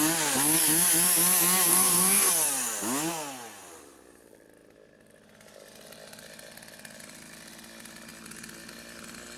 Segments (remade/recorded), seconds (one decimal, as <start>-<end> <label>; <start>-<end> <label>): 0.0-1.7 recorded; 1.7-2.3 remade; 2.3-9.4 recorded